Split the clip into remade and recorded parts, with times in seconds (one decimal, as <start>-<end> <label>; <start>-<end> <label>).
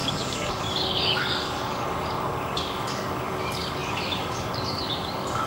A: 0.0-5.5 remade